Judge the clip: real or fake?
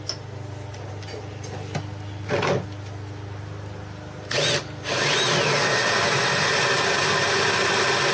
real